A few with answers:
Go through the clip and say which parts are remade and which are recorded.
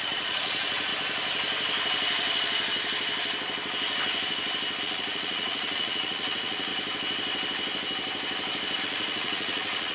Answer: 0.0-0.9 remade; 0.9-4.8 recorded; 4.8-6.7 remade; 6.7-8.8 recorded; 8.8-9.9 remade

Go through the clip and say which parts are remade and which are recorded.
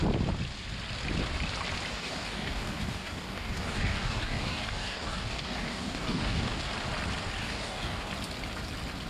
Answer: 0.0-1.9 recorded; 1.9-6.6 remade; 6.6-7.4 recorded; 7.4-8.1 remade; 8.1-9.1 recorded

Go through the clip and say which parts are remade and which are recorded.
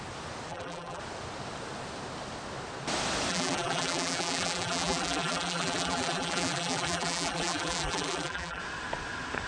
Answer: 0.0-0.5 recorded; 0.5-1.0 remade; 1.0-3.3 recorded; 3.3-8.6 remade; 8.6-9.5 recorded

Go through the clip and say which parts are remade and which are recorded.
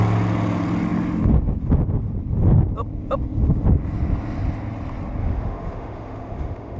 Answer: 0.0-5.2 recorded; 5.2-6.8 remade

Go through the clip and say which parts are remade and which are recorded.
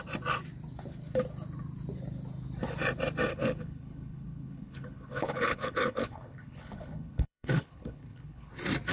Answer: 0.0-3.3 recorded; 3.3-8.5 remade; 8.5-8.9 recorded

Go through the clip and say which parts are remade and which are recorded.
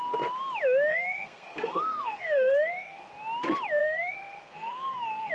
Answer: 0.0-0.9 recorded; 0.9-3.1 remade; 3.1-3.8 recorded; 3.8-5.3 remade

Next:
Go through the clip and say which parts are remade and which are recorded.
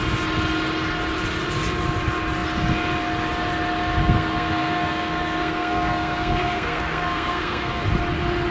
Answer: 0.0-4.0 recorded; 4.0-7.8 remade; 7.8-8.5 recorded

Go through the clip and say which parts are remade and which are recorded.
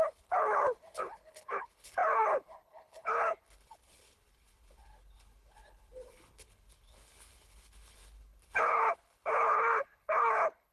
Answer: 0.0-10.7 remade